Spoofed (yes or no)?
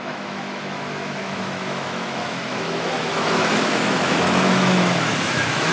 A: yes